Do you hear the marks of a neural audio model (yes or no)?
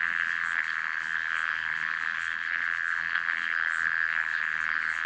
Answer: yes